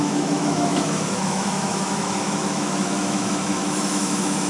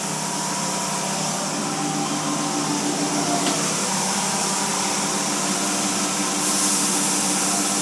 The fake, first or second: first